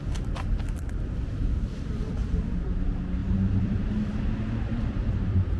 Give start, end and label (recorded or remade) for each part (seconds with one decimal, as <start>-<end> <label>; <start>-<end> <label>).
0.0-1.4 recorded; 1.4-2.1 remade; 2.1-3.2 recorded; 3.2-3.8 remade; 3.8-4.7 recorded; 4.7-5.6 remade